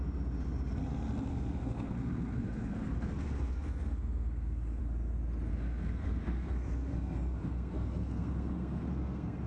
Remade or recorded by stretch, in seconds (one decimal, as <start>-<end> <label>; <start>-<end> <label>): 0.0-1.3 recorded; 1.3-4.8 remade; 4.8-5.5 recorded; 5.5-9.5 remade